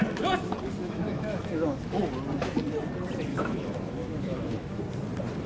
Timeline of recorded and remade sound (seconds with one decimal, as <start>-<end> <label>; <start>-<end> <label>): 0.0-0.8 recorded; 0.8-2.0 remade; 2.0-3.3 recorded; 3.3-4.8 remade; 4.8-5.5 recorded